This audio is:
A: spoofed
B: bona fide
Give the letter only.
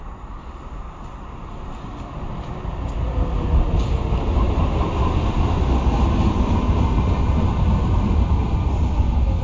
B